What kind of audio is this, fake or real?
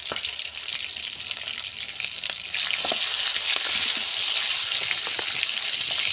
real